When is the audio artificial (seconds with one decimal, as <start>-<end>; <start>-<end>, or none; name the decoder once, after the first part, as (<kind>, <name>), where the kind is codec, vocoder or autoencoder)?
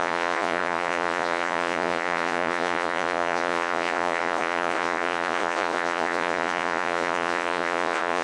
0.0-8.2 (vocoder, Vocos)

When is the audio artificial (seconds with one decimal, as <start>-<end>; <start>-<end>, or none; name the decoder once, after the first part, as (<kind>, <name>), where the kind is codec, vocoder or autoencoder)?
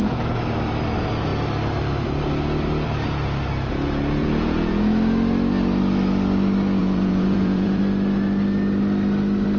4.2-4.9 (vocoder, Vocos); 6.8-7.8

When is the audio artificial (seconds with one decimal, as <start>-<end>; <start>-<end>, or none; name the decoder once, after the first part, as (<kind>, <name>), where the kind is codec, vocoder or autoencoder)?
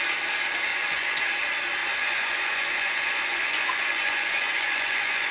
0.7-1.2 (vocoder, Vocos); 1.8-5.3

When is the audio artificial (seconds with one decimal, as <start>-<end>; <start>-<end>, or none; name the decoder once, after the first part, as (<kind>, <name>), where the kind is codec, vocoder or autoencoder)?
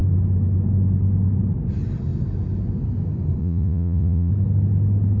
3.4-4.3 (vocoder, Vocos)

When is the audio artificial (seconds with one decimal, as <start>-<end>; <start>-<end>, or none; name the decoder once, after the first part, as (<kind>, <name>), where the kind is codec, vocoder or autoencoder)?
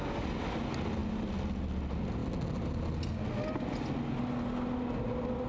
none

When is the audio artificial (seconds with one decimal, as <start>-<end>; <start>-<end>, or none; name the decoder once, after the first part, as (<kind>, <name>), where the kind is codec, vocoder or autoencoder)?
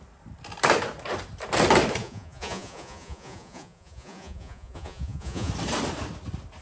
2.0-5.5 (vocoder, Vocos)